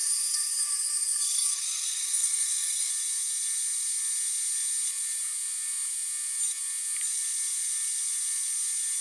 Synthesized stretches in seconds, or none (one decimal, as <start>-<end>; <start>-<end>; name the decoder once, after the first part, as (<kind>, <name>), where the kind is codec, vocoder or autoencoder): 0.0-2.9 (codec, SNAC)